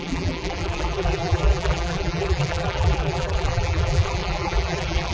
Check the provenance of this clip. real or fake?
fake